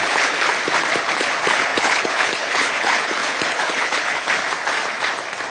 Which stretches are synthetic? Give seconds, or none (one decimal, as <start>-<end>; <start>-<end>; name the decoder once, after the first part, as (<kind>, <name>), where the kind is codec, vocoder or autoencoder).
0.0-0.5 (codec, HILCodec); 1.0-4.4